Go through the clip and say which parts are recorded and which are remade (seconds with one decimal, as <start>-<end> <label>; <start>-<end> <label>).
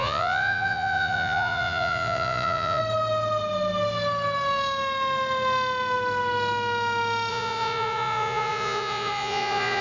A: 0.0-2.8 remade; 2.8-7.3 recorded; 7.3-9.8 remade